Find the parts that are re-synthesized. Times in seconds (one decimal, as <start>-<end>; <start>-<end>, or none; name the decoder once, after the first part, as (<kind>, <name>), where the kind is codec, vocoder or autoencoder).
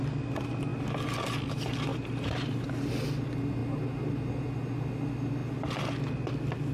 1.9-2.9 (vocoder, BigVGAN v2)